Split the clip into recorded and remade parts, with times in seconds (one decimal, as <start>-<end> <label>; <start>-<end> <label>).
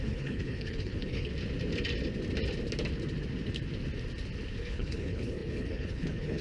0.0-1.3 remade; 1.3-4.6 recorded; 4.6-6.4 remade